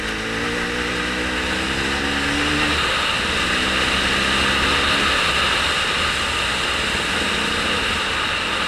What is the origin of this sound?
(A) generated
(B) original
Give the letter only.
B